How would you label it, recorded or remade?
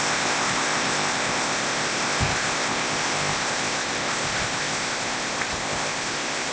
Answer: remade